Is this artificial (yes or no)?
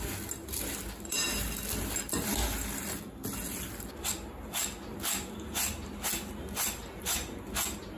no